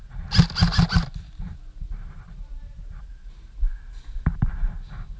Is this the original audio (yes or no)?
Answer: yes